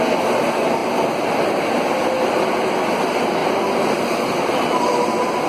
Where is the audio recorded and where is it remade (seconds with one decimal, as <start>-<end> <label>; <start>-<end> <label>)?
0.0-5.5 recorded